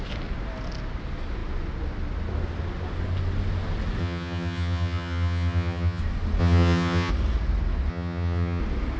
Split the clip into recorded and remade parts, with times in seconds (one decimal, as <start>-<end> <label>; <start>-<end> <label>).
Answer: 0.0-4.0 recorded; 4.0-6.0 remade; 6.0-6.4 recorded; 6.4-7.1 remade; 7.1-7.9 recorded; 7.9-8.6 remade; 8.6-9.0 recorded